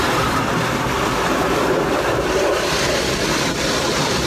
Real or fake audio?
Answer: fake